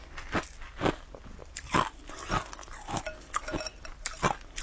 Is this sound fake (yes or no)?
no